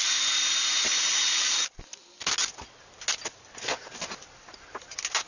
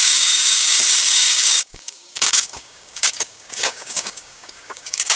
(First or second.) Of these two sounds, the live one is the first